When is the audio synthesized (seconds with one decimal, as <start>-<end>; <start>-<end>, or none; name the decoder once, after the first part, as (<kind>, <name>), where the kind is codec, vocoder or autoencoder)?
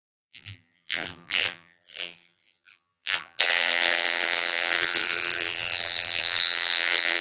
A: 0.0-7.2 (vocoder, BigVGAN v2)